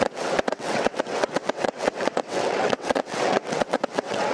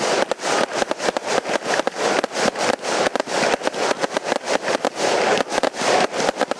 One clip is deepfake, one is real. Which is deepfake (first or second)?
first